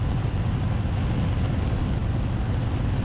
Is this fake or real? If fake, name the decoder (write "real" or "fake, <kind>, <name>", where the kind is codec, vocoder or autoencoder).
real